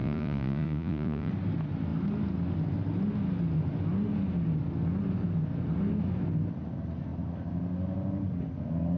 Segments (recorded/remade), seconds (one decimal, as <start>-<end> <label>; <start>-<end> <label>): 0.0-1.3 remade; 1.3-9.0 recorded